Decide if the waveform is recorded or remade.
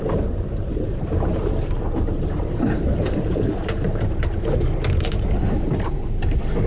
remade